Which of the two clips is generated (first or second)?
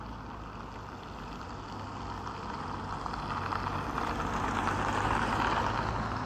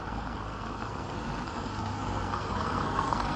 second